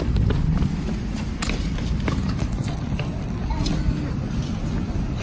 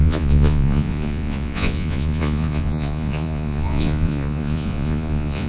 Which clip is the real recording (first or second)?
first